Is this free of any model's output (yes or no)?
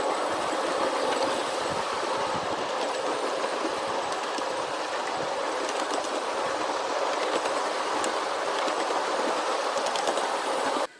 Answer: yes